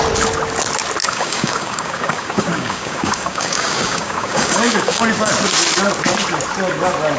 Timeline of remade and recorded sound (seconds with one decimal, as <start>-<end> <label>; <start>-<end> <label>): 0.0-1.0 recorded; 1.0-5.3 remade; 5.3-7.2 recorded